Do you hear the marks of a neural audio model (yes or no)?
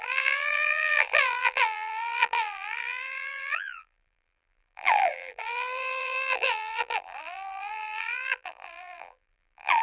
yes